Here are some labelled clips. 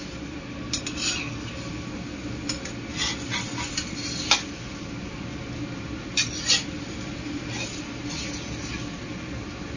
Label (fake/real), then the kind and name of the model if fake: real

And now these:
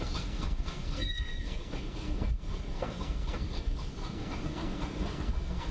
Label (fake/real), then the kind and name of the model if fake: fake, codec, SNAC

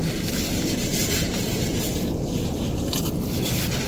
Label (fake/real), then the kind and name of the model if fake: real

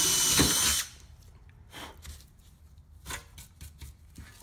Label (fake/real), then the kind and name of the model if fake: fake, vocoder, BigVGAN v2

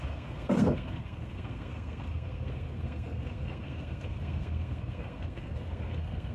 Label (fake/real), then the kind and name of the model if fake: fake, codec, SNAC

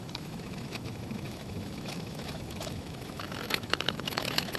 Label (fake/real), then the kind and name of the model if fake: fake, autoencoder, DAC-VAE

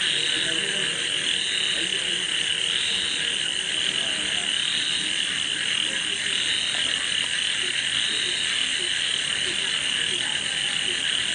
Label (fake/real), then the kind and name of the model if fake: real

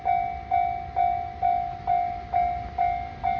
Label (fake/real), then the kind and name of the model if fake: real